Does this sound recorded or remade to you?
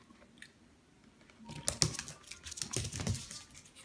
recorded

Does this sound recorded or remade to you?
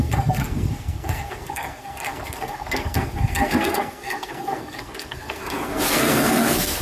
remade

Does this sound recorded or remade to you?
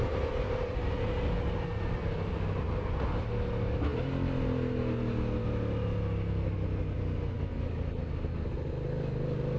recorded